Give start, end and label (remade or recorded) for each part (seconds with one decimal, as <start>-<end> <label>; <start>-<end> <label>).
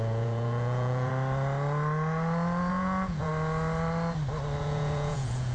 0.0-1.1 remade; 1.1-2.7 recorded; 2.7-3.3 remade; 3.3-4.6 recorded; 4.6-5.5 remade